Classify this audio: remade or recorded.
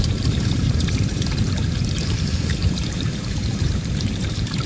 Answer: remade